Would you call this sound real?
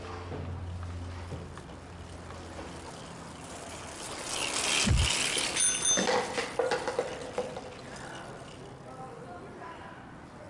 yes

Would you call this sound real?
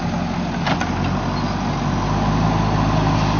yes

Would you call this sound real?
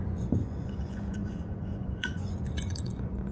no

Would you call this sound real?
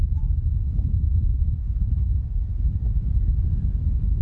yes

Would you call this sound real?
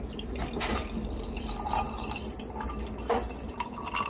yes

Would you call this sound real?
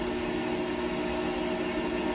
yes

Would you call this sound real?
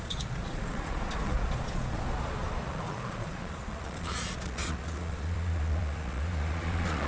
no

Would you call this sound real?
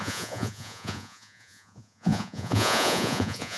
no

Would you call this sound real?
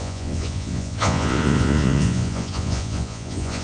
no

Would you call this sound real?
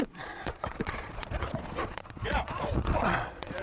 no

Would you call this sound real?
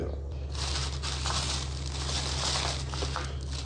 yes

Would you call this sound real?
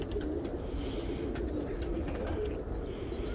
yes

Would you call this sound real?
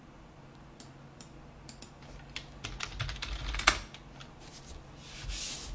yes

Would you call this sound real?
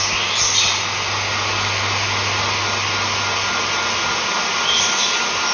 yes